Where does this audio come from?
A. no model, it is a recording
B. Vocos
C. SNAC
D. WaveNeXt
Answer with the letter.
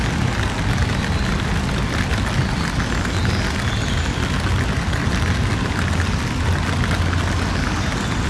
A